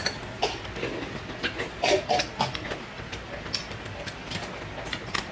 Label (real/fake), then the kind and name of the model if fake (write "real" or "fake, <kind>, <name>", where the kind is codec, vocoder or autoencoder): real